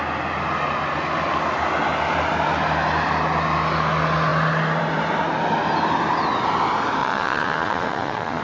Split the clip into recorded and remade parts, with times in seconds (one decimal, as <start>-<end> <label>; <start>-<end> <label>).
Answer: 0.0-7.0 recorded; 7.0-8.4 remade